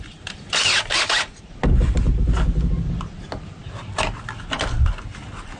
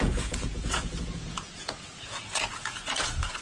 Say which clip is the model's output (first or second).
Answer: second